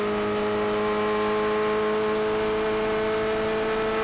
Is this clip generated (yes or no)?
no